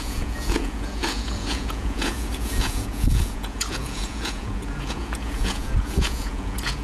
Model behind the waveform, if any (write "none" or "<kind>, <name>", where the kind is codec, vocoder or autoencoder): vocoder, Vocos